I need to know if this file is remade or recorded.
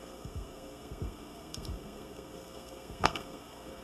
remade